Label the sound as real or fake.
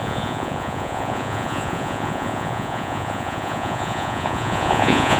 fake